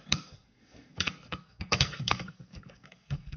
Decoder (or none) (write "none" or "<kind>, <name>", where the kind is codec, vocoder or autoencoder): codec, SNAC